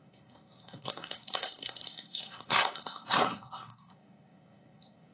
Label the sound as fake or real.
fake